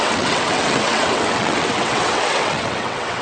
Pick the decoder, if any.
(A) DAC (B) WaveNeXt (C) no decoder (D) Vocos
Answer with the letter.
B